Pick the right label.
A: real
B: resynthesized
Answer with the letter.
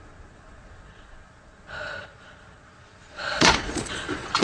B